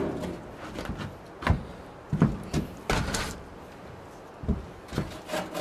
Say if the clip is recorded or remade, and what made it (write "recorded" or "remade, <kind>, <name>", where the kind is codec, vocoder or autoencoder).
recorded